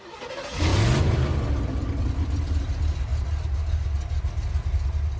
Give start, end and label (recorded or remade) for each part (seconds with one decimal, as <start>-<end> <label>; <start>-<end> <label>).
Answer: 0.0-5.2 recorded